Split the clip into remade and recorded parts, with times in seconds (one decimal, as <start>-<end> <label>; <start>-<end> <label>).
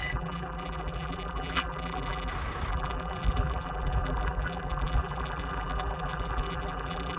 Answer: 0.0-2.3 remade; 2.3-2.7 recorded; 2.7-7.2 remade